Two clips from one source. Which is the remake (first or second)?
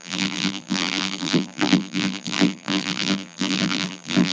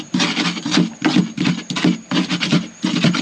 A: first